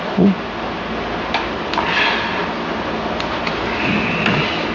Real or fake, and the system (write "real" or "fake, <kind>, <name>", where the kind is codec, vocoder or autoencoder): real